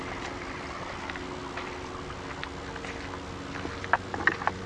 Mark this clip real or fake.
real